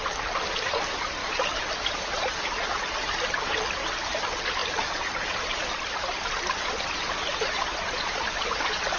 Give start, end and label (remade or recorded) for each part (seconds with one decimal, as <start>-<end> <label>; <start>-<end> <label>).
0.0-9.0 recorded